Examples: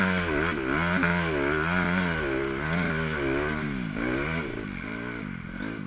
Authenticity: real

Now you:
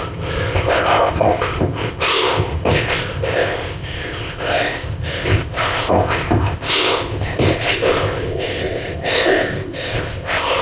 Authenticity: fake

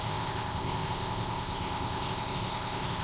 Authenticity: fake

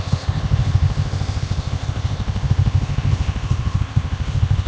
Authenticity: fake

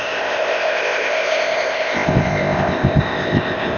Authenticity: fake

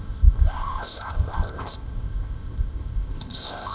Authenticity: fake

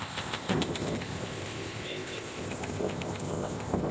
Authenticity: fake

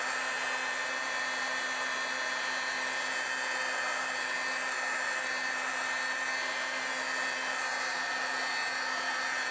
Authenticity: real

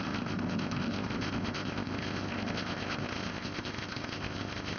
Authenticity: fake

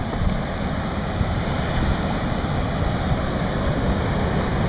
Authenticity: real